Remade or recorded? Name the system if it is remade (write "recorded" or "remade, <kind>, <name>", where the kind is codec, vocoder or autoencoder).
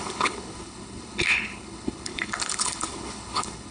remade, codec, HILCodec